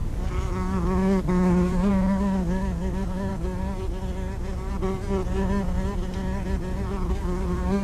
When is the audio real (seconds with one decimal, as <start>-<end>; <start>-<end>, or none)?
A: 3.3-7.1